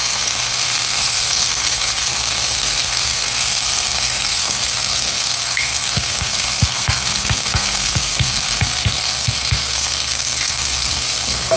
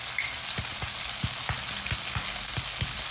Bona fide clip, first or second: second